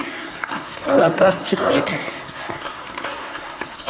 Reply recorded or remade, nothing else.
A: remade